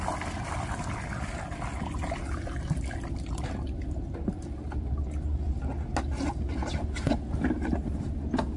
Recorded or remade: recorded